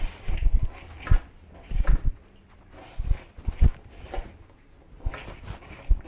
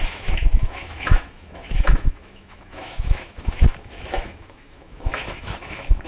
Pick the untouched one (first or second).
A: first